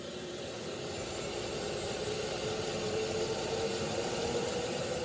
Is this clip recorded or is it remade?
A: recorded